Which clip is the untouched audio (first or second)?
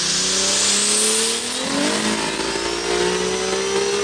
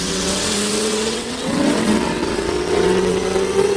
first